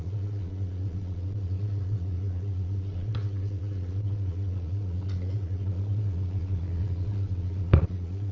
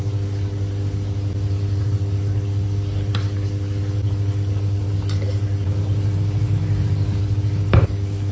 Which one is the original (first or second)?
second